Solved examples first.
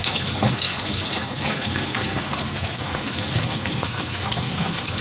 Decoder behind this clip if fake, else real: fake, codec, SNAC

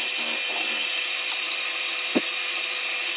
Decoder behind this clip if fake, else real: real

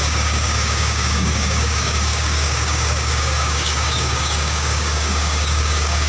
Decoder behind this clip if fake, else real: fake, codec, DAC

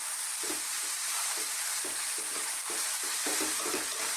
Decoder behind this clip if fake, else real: fake, vocoder, BigVGAN v2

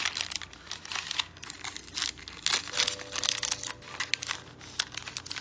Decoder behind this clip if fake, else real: real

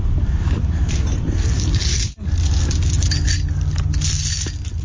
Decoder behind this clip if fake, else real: real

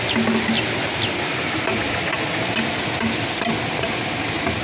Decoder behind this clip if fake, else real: real